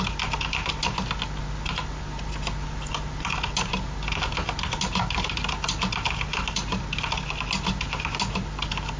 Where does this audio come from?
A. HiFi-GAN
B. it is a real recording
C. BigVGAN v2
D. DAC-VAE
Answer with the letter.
B